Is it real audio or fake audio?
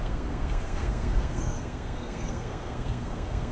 fake